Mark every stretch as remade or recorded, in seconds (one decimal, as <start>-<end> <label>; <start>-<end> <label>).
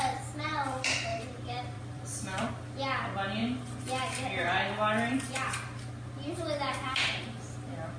0.0-1.1 recorded; 1.1-2.5 remade; 2.5-8.0 recorded